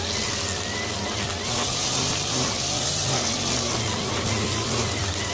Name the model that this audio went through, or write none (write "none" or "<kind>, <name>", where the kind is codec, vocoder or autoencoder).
none